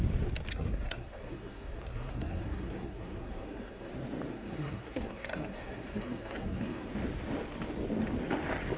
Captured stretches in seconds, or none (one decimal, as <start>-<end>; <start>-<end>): 0.0-0.5; 3.9-4.3; 6.9-8.8